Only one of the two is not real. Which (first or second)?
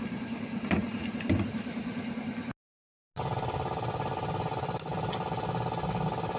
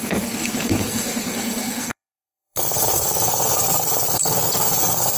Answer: second